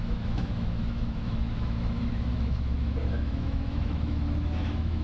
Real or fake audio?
fake